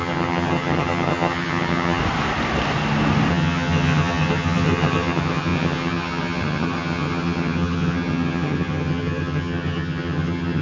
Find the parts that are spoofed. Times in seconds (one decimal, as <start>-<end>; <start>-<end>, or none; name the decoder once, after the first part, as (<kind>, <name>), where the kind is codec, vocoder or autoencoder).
0.0-2.0 (vocoder, HiFi-GAN); 3.3-10.6